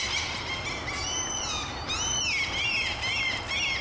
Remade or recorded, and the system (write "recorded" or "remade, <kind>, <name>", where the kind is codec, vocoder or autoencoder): recorded